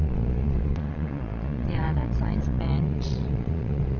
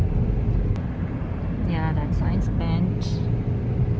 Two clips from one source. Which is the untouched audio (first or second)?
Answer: second